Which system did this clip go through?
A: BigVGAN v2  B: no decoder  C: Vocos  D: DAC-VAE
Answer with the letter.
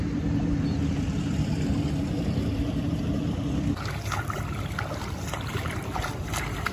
B